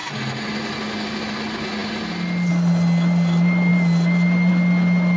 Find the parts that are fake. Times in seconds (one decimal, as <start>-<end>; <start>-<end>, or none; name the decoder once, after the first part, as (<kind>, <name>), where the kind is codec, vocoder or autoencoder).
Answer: none